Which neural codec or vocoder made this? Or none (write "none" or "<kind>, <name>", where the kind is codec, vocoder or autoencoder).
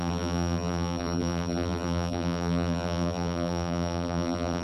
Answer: vocoder, BigVGAN v2